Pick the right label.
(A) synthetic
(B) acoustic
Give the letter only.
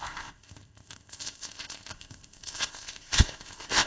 A